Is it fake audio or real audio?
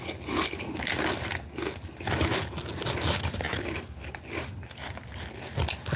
real